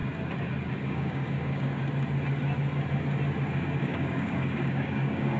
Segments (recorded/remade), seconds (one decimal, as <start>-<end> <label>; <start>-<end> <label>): 0.0-0.7 recorded; 0.7-1.8 remade; 1.8-3.5 recorded; 3.5-5.4 remade